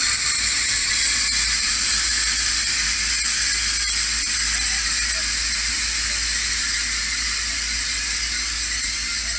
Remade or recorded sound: recorded